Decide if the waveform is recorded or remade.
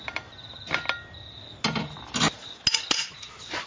recorded